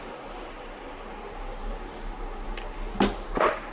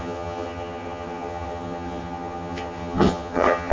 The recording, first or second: first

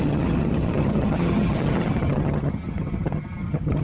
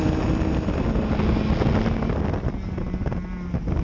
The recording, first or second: second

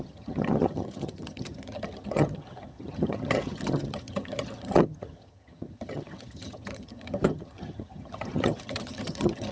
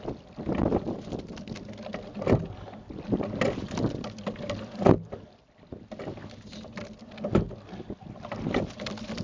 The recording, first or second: second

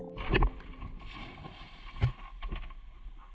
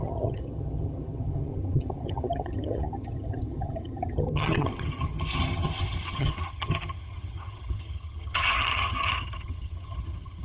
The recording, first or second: first